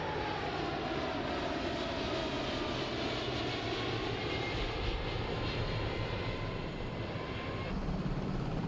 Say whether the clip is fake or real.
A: real